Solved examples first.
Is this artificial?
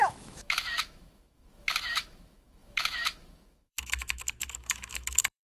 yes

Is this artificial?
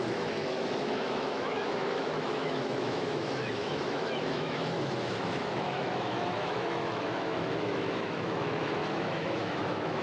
yes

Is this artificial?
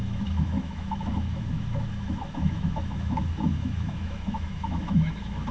yes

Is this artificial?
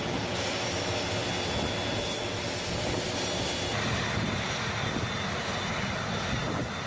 no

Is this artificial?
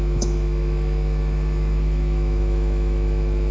yes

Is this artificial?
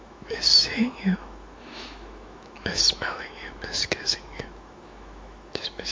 yes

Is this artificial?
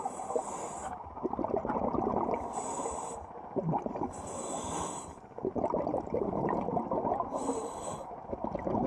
no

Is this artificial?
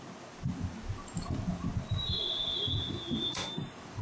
no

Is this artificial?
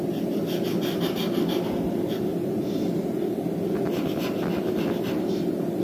no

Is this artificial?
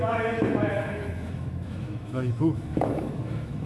yes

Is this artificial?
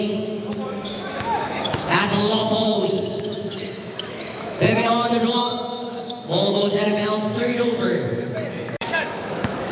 yes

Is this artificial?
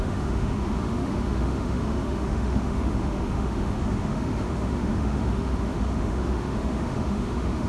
yes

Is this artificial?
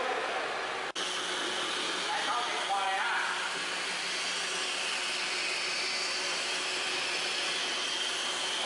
no